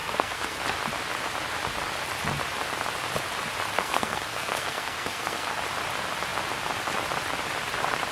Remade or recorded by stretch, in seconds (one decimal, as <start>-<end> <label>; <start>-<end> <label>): 0.0-0.6 remade; 0.6-3.7 recorded; 3.7-5.6 remade; 5.6-8.1 recorded